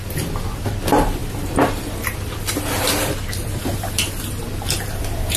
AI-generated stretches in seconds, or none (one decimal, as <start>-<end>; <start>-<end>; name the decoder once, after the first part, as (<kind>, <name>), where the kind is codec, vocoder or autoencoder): none